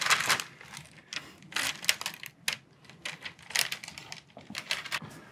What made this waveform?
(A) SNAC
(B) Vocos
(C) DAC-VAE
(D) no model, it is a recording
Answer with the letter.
D